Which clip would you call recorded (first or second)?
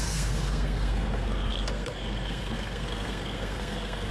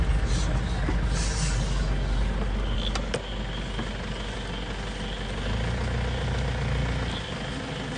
second